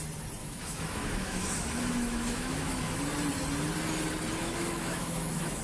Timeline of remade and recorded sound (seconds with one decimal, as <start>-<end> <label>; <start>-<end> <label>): 0.0-0.4 recorded; 0.4-3.0 remade; 3.0-4.4 recorded; 4.4-5.6 remade